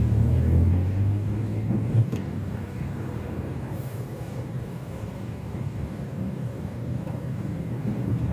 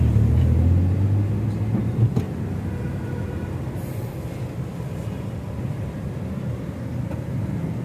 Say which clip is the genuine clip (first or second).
second